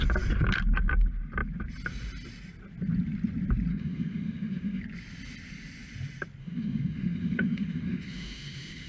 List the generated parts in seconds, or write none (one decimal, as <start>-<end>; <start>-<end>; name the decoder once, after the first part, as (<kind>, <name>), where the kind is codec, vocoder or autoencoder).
3.7-4.8 (autoencoder, DAC-VAE); 6.4-8.9